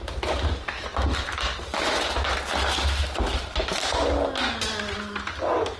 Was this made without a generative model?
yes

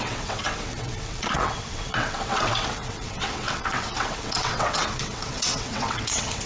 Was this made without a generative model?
no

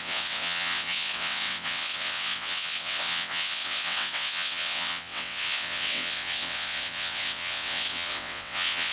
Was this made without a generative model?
no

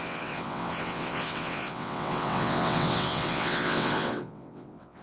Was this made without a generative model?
no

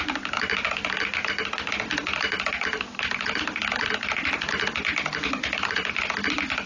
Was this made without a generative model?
yes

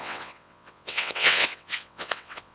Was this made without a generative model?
no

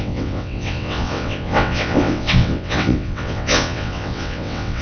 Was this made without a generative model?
no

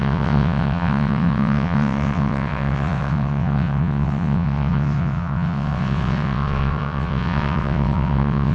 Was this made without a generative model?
no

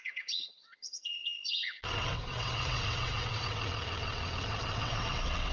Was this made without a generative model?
no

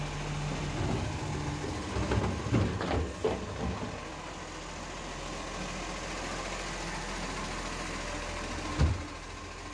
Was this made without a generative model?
yes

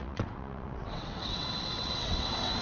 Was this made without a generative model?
no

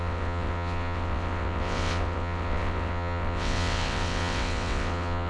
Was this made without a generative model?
no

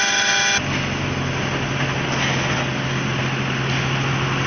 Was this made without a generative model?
yes